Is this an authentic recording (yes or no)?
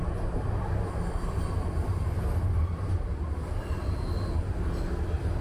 yes